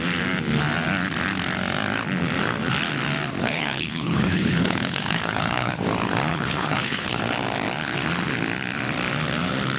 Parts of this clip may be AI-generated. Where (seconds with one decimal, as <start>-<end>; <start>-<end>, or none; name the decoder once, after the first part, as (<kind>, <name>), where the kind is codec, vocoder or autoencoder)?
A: 3.4-5.8 (codec, HILCodec); 6.3-7.2